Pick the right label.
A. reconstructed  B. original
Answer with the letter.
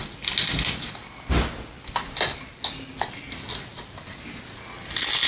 B